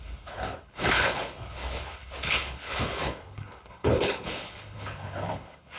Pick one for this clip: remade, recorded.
remade